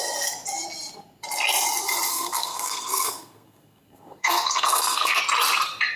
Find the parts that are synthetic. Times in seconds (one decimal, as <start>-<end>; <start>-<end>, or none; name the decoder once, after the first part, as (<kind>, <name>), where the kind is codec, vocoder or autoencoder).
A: 2.1-5.2 (codec, SNAC)